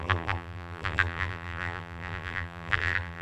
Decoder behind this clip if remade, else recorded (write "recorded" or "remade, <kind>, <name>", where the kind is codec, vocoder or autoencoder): remade, vocoder, BigVGAN v2